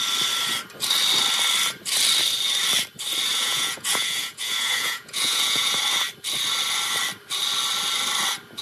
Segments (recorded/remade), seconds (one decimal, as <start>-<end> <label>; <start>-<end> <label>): 0.0-3.3 recorded; 3.3-5.8 remade; 5.8-8.6 recorded